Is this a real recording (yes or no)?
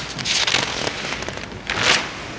yes